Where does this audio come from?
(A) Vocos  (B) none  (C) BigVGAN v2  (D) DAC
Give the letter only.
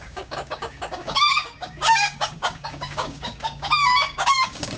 D